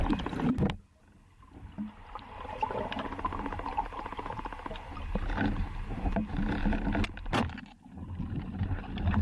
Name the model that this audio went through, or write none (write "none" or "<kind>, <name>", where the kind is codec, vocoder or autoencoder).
none